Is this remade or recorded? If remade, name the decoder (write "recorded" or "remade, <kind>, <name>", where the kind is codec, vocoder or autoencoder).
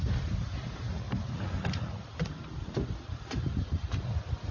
recorded